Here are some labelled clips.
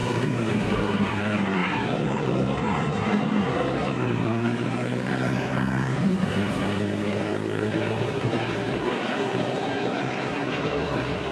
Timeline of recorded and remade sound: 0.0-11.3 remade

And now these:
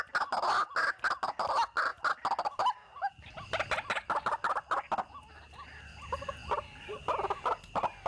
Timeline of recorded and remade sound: 0.0-8.1 recorded

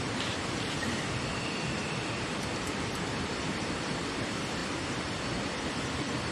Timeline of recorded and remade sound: 0.0-6.3 remade

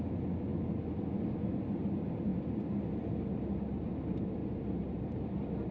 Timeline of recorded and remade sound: 0.0-0.5 remade; 0.5-1.8 recorded; 1.8-2.3 remade; 2.3-3.9 recorded; 3.9-5.7 remade

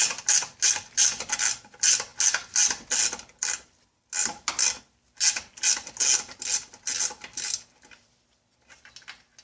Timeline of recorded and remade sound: 0.0-9.4 recorded